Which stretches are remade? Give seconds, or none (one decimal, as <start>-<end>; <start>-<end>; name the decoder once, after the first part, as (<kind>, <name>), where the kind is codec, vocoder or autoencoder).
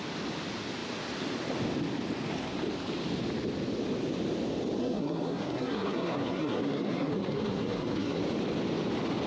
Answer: 4.8-8.2 (codec, SNAC)